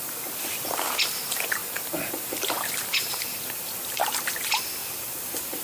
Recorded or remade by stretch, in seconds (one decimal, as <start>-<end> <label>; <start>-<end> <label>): 0.0-1.6 recorded; 1.6-3.8 remade; 3.8-4.8 recorded; 4.8-5.6 remade